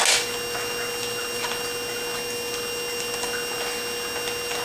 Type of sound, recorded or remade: recorded